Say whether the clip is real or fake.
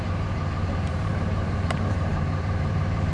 fake